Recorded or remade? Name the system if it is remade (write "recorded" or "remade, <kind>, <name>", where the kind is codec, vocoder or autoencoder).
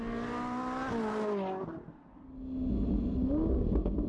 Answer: recorded